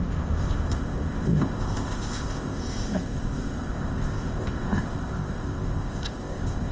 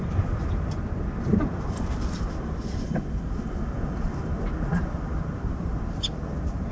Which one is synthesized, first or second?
first